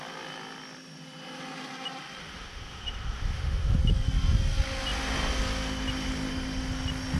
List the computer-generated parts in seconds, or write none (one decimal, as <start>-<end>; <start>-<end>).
2.2-3.8